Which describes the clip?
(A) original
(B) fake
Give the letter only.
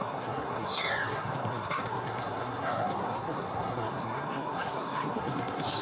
B